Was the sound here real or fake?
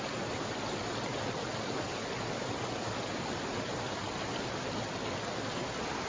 real